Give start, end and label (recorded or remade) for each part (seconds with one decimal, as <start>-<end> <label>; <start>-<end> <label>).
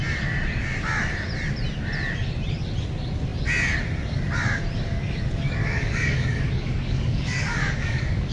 0.0-5.6 recorded; 5.6-8.3 remade